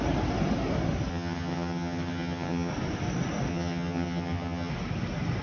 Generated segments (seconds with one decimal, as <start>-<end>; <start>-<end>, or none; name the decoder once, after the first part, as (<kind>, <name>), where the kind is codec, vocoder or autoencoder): 1.1-2.7 (vocoder, HiFi-GAN); 3.5-4.7